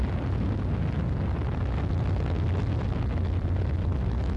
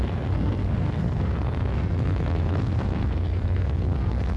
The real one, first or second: first